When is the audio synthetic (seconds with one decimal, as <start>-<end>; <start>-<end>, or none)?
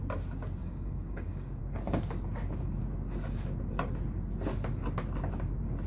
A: 0.6-1.6